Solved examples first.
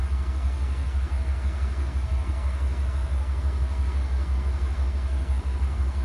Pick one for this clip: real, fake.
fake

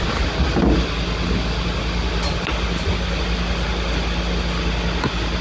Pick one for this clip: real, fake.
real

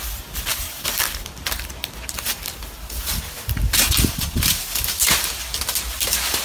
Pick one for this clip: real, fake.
real